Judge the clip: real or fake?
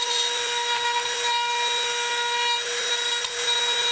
real